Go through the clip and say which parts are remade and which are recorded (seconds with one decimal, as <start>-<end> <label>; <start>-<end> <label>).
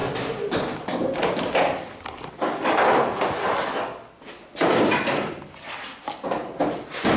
0.0-7.2 recorded